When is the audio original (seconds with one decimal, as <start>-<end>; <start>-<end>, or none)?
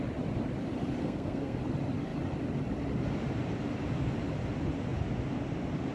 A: 0.0-1.0; 1.6-5.9